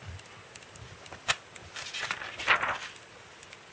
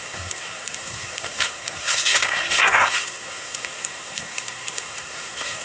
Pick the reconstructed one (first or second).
second